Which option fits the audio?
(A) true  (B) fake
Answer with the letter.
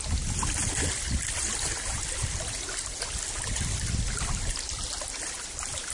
A